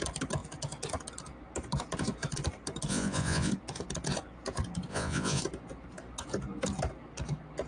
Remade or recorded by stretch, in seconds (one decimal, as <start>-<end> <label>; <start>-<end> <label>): 0.0-2.9 recorded; 2.9-3.5 remade; 3.5-4.9 recorded; 4.9-5.4 remade; 5.4-7.7 recorded